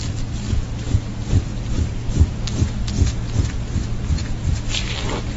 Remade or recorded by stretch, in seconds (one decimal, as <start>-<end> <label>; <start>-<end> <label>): 0.0-1.5 recorded; 1.5-2.1 remade; 2.1-5.4 recorded